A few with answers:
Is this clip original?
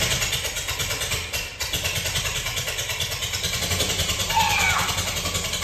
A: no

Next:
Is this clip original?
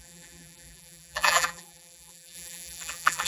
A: no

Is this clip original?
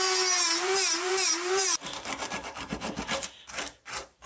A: no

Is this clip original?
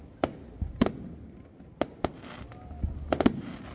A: yes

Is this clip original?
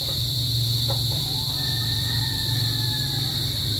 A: no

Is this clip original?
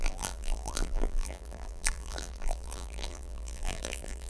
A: no